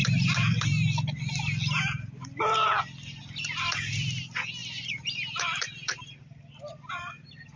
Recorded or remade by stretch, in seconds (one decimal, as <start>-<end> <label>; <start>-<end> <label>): 0.0-1.4 remade; 1.4-2.6 recorded; 2.6-3.2 remade; 3.2-4.6 recorded; 4.6-6.4 remade; 6.4-7.6 recorded